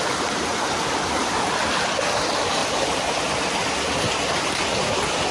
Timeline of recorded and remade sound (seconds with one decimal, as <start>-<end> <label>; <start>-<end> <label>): 0.0-5.3 recorded